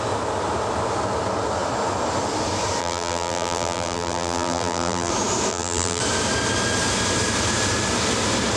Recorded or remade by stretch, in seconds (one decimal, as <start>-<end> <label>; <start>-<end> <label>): 0.0-2.8 recorded; 2.8-5.1 remade; 5.1-5.5 recorded; 5.5-6.0 remade; 6.0-8.6 recorded